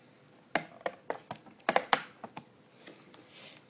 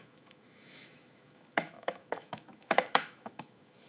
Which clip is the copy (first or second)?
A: second